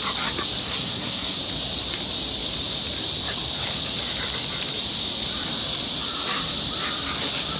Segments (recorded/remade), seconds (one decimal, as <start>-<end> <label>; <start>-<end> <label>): 0.0-0.6 recorded; 0.6-1.4 remade; 1.4-7.6 recorded